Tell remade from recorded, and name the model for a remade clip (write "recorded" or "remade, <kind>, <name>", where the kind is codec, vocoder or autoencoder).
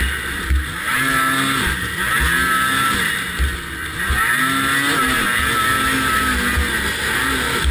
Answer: recorded